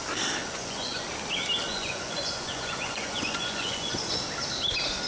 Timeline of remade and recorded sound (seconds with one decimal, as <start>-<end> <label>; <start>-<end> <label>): 0.0-0.4 recorded; 0.4-1.0 remade; 1.0-1.7 recorded; 1.7-4.2 remade; 4.2-5.1 recorded